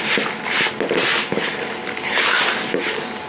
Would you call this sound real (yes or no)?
yes